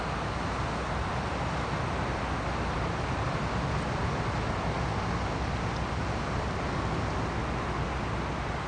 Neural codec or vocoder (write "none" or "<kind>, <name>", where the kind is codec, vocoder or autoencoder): none